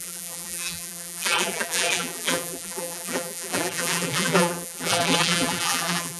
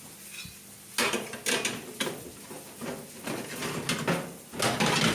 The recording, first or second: second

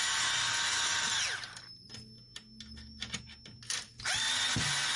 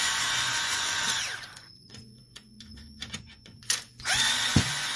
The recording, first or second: first